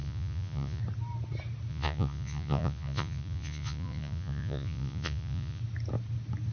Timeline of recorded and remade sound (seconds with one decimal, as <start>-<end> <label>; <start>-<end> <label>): 0.0-0.8 remade; 0.8-1.7 recorded; 1.7-5.6 remade; 5.6-6.5 recorded